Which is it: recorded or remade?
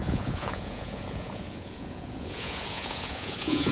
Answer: remade